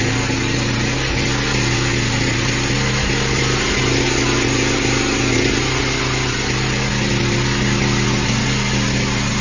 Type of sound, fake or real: real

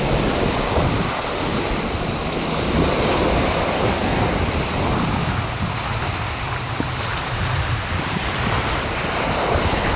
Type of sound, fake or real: real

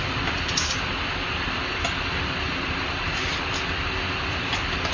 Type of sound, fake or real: real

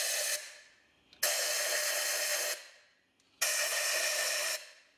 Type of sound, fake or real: real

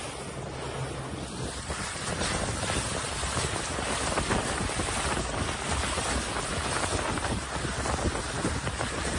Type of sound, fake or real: real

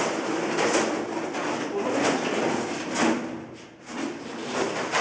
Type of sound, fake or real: real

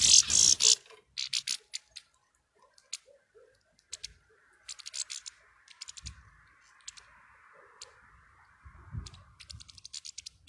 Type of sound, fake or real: real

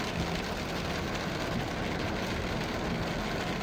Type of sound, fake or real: real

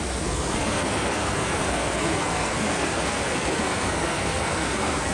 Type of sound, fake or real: fake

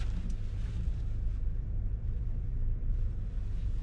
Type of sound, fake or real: fake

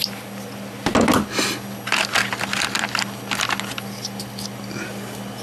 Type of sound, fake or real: real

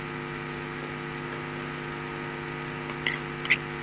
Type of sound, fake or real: real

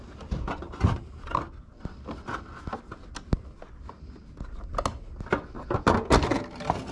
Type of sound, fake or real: real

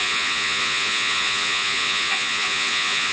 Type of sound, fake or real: fake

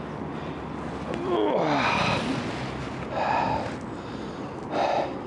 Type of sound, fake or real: real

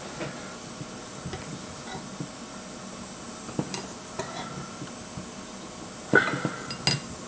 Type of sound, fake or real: real